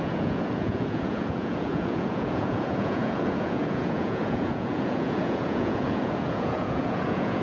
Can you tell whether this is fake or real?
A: fake